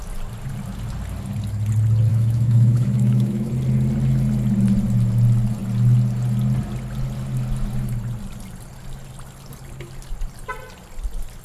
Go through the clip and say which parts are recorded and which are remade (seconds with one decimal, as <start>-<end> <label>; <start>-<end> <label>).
0.0-2.1 recorded; 2.1-3.5 remade; 3.5-11.4 recorded